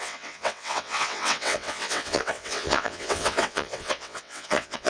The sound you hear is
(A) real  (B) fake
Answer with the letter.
B